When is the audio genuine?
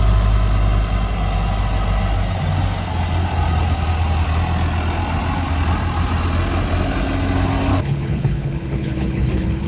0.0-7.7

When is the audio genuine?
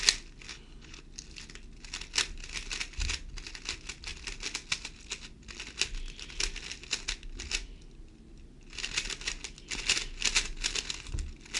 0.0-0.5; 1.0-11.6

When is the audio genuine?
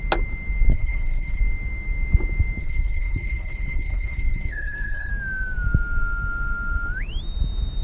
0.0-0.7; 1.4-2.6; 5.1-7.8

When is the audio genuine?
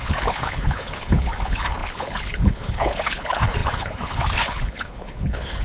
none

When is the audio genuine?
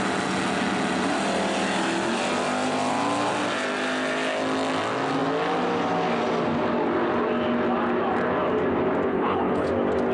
0.0-9.1; 9.7-10.1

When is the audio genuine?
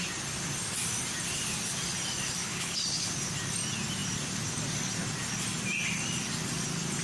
0.0-2.4; 3.1-7.0